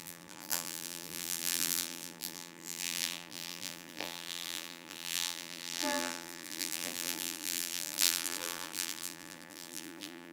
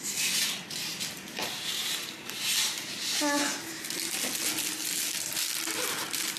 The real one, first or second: second